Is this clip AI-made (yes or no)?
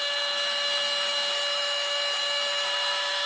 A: yes